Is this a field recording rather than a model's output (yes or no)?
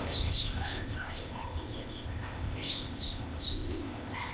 no